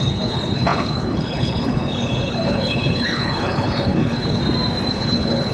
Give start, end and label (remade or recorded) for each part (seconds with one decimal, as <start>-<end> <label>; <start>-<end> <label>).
0.0-4.4 remade; 4.4-4.9 recorded; 4.9-5.5 remade